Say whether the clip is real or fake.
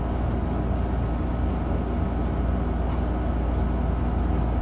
real